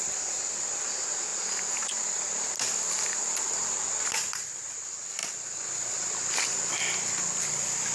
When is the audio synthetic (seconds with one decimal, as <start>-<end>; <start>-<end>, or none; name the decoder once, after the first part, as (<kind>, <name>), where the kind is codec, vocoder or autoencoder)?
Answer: none